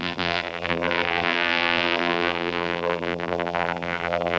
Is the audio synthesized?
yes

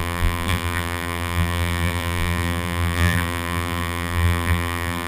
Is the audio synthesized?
yes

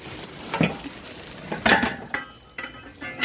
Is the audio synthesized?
no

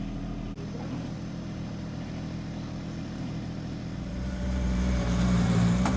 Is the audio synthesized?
yes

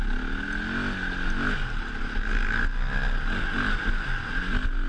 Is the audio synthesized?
no